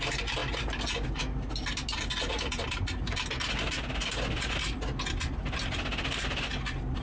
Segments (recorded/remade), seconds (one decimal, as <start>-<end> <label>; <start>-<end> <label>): 0.0-7.0 recorded

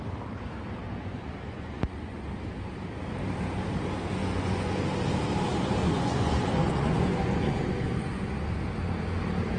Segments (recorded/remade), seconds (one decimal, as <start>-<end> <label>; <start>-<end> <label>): 0.0-1.0 recorded; 1.0-2.2 remade; 2.2-4.2 recorded; 4.2-4.7 remade; 4.7-5.8 recorded; 5.8-8.6 remade; 8.6-9.6 recorded

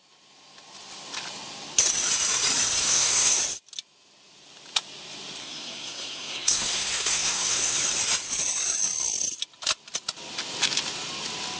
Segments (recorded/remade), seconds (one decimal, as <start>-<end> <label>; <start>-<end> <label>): 0.0-2.8 recorded; 2.8-3.4 remade; 3.4-5.4 recorded; 5.4-7.8 remade; 7.8-11.6 recorded

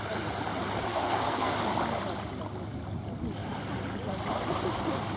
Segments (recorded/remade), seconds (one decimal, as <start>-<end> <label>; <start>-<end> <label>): 0.0-0.9 recorded; 0.9-1.5 remade; 1.5-5.2 recorded